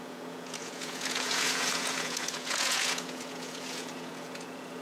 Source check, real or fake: fake